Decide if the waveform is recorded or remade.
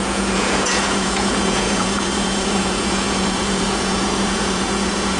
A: remade